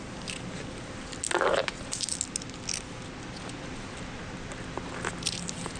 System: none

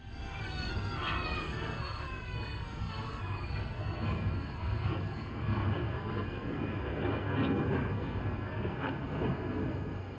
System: codec, SNAC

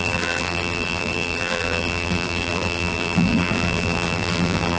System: vocoder, BigVGAN v2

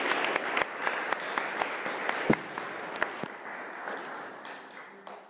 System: none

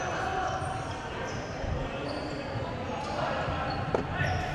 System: none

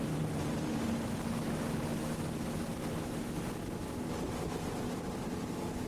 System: none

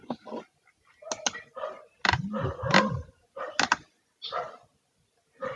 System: none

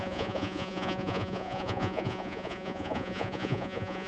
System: vocoder, Vocos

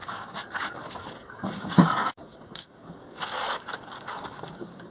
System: codec, DAC